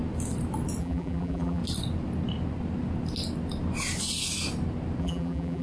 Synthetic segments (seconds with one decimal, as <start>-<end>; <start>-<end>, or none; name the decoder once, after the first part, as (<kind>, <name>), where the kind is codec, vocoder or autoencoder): 0.8-1.6 (vocoder, BigVGAN v2); 5.0-5.6